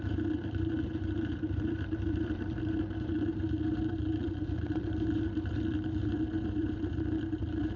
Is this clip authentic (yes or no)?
no